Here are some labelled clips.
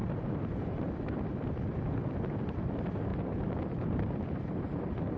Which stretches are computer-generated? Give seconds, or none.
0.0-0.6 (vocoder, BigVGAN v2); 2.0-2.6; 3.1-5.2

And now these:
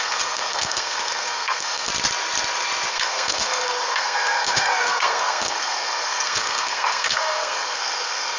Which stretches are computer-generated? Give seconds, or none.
0.0-1.9 (codec, SNAC); 2.9-8.4

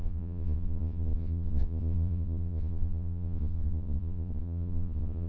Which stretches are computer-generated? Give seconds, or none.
0.0-5.3 (vocoder, Vocos)

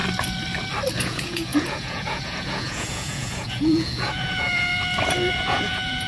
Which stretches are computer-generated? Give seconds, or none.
0.9-4.7 (vocoder, Vocos); 5.3-6.1

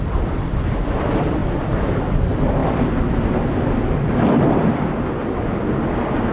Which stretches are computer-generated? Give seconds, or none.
0.0-1.4 (vocoder, BigVGAN v2); 2.1-2.6; 4.1-5.2

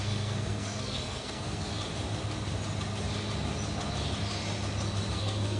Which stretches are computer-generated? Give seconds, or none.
0.0-1.7 (codec, SNAC); 5.1-5.6

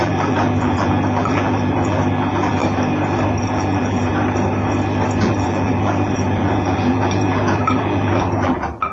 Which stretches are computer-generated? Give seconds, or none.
0.0-2.6 (vocoder, BigVGAN v2); 3.4-4.1; 5.2-8.9

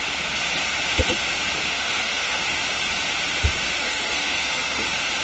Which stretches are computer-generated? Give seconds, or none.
1.7-2.4 (codec, SNAC); 3.8-4.8